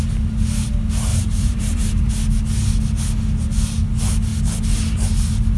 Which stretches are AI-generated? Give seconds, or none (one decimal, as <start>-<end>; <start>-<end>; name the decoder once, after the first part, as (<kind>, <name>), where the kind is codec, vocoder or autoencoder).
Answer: 1.1-2.1 (vocoder, BigVGAN v2)